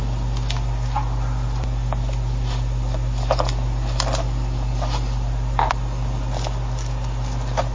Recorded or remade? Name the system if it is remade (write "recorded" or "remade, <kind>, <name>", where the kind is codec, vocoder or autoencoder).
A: recorded